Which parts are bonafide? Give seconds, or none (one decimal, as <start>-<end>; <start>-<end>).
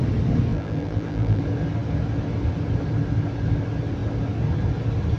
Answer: 0.0-0.5; 1.4-5.2